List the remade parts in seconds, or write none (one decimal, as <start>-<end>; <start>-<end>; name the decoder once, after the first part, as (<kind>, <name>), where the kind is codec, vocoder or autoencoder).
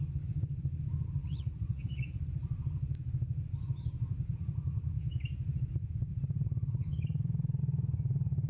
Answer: 1.2-2.2 (vocoder, Vocos)